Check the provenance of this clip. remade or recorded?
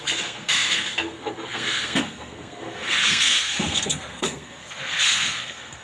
remade